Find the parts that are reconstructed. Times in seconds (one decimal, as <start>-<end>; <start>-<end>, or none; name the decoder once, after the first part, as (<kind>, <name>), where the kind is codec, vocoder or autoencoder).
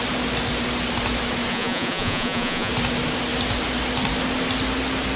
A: 1.5-2.7 (vocoder, Vocos)